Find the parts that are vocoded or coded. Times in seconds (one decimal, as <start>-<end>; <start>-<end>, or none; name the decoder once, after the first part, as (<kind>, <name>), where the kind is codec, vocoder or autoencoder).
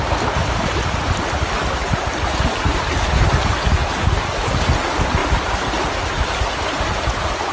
0.4-1.2 (vocoder, BigVGAN v2); 3.8-4.6